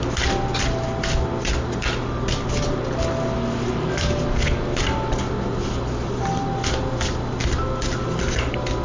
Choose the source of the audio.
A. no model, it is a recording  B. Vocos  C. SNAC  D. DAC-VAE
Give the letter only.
A